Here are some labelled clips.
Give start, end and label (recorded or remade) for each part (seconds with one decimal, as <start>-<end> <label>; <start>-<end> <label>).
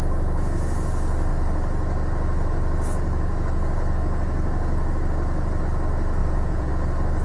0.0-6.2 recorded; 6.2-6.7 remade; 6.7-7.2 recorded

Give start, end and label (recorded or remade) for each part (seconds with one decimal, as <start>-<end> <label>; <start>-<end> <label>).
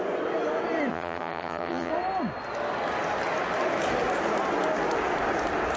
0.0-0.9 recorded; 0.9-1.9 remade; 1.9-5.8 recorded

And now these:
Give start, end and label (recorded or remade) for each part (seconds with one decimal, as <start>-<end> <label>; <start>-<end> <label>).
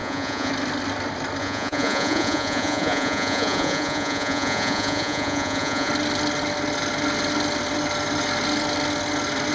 0.0-0.5 remade; 0.5-1.4 recorded; 1.4-5.9 remade; 5.9-9.5 recorded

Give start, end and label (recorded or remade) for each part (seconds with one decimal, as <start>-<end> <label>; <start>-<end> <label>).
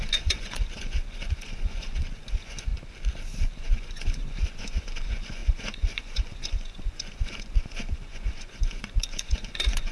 0.0-2.7 remade; 2.7-3.6 recorded; 3.6-9.9 remade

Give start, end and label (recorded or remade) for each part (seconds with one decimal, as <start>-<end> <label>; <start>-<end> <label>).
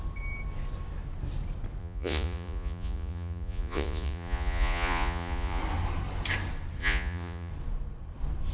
0.0-1.8 recorded; 1.8-5.6 remade; 5.6-6.8 recorded; 6.8-7.5 remade; 7.5-8.5 recorded